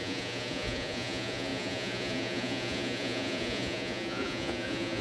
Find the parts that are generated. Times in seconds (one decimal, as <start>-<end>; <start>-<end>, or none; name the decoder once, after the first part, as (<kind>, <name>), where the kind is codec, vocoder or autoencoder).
0.0-5.0 (vocoder, Vocos)